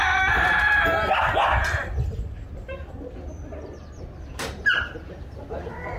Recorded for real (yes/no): yes